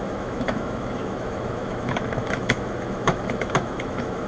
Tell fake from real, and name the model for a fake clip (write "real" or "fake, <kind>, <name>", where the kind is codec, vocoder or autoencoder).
fake, autoencoder, DAC-VAE